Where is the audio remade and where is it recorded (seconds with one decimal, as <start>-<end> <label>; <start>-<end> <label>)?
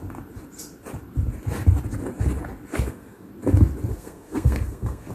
0.0-2.7 recorded; 2.7-3.3 remade; 3.3-3.9 recorded; 3.9-5.1 remade